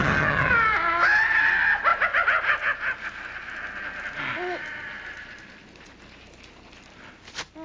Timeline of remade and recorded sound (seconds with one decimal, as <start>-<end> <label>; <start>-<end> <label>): 0.0-0.5 remade; 0.5-7.6 recorded